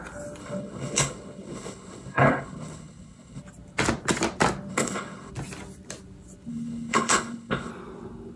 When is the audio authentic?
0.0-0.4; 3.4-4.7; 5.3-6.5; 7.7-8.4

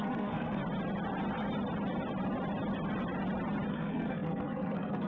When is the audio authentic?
0.6-3.7